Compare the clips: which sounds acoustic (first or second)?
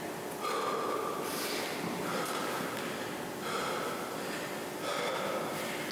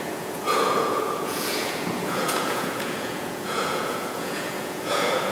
first